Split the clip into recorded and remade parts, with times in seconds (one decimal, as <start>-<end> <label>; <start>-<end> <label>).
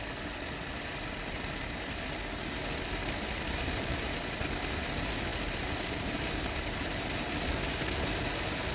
0.0-8.7 recorded